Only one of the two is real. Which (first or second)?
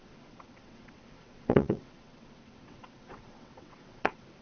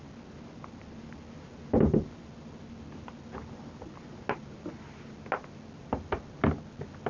second